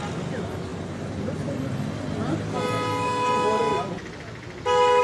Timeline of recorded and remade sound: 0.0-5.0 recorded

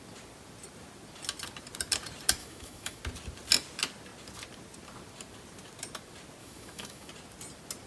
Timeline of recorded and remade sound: 0.0-2.4 recorded; 2.4-3.0 remade; 3.0-6.4 recorded; 6.4-7.1 remade; 7.1-7.9 recorded

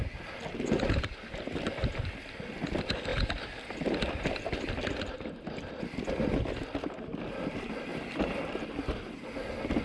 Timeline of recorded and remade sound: 0.0-3.1 recorded; 3.1-5.8 remade; 5.8-7.9 recorded; 7.9-8.6 remade; 8.6-9.8 recorded

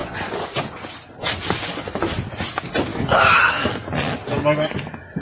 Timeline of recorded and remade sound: 0.0-0.6 remade; 0.6-5.2 recorded